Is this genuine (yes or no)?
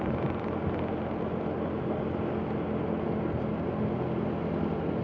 yes